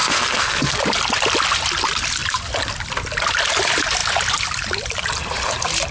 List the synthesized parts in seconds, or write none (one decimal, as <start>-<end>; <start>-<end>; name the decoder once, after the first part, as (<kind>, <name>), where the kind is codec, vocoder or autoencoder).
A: 0.0-0.8 (codec, SNAC)